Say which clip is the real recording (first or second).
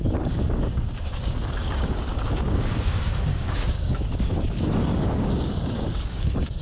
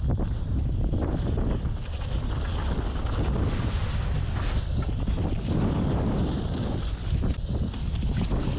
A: second